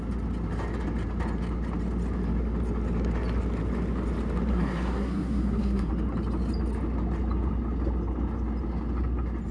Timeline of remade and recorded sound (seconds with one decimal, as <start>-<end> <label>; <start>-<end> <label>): 0.0-4.5 recorded; 4.5-5.9 remade; 5.9-9.5 recorded